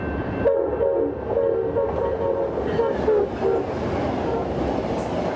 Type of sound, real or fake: real